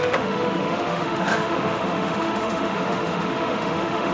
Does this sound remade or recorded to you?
remade